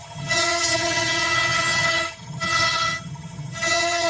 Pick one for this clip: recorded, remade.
remade